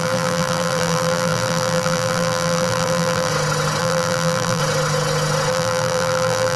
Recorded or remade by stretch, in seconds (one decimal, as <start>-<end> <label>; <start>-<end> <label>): 0.0-3.3 remade; 3.3-3.8 recorded; 3.8-4.6 remade; 4.6-5.5 recorded; 5.5-6.6 remade